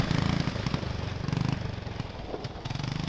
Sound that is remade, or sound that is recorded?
recorded